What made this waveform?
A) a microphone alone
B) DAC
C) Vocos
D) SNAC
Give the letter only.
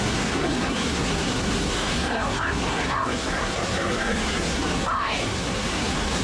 D